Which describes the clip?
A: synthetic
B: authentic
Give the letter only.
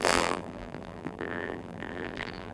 A